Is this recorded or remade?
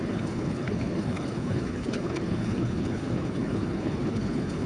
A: remade